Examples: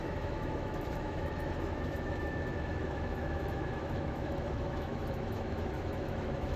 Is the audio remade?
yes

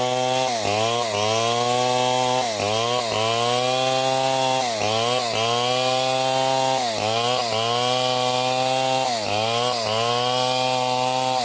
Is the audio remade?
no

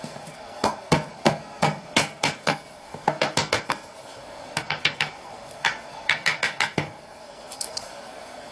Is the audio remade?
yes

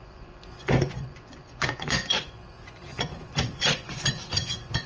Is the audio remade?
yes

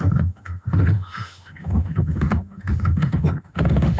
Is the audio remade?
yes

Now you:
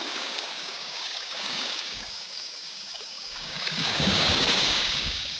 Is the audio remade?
yes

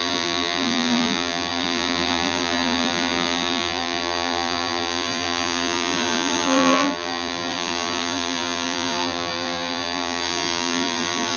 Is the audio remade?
yes